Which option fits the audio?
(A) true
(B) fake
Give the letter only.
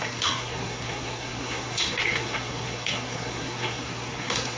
B